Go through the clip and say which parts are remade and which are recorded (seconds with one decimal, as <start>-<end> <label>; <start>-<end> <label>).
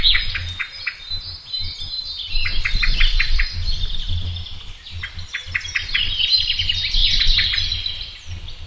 0.0-8.7 recorded